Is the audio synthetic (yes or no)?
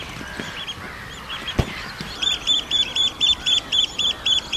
yes